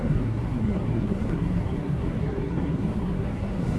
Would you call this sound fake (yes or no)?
yes